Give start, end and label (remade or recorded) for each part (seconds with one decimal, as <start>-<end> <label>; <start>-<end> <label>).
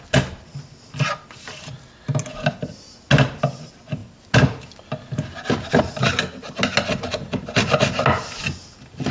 0.0-9.1 recorded